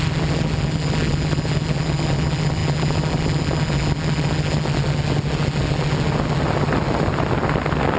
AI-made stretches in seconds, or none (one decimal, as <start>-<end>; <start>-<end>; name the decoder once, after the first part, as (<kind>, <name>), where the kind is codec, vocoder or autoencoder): none